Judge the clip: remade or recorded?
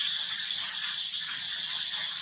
recorded